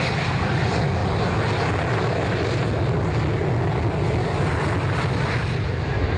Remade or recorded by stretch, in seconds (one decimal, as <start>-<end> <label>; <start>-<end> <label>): 0.0-6.2 recorded